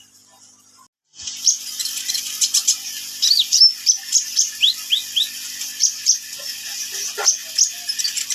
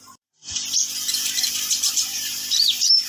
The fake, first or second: second